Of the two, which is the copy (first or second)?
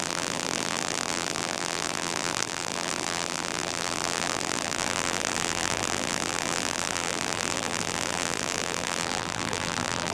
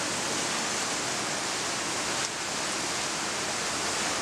first